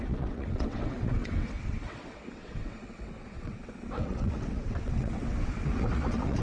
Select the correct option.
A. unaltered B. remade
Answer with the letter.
B